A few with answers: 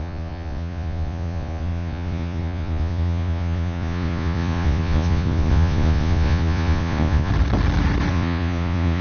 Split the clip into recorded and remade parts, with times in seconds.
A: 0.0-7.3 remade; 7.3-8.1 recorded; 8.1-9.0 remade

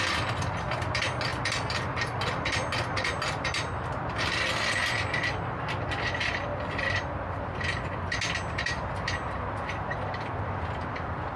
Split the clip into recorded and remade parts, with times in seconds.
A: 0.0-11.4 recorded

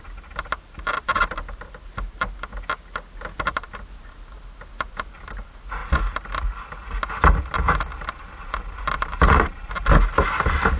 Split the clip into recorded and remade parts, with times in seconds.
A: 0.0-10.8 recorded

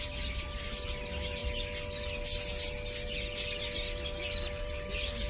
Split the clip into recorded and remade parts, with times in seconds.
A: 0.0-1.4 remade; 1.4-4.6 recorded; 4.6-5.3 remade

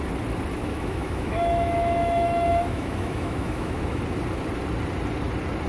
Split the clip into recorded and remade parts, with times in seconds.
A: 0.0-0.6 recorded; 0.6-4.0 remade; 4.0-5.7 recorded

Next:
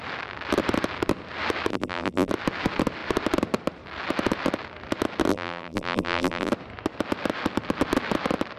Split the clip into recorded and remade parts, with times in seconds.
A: 0.0-1.7 recorded; 1.7-2.3 remade; 2.3-5.3 recorded; 5.3-6.5 remade; 6.5-8.6 recorded